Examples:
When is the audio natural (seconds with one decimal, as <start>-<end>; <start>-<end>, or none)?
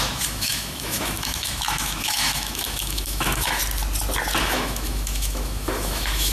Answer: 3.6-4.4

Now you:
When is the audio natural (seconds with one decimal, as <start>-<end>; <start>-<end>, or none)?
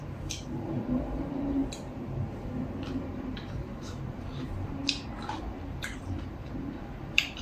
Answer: 1.6-3.0; 4.8-5.3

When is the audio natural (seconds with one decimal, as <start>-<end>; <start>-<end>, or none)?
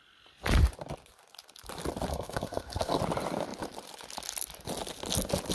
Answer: 0.0-2.1; 3.0-5.5